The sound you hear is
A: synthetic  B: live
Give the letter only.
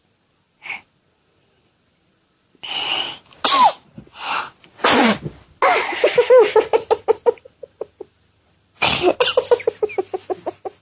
B